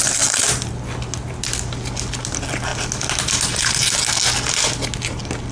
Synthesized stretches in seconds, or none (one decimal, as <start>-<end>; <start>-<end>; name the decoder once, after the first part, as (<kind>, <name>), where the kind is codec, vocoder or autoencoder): none